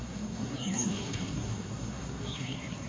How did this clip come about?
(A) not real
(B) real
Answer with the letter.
A